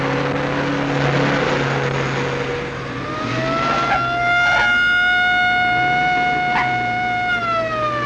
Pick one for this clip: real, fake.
real